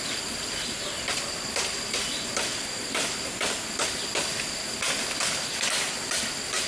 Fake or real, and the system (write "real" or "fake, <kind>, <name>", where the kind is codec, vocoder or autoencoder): real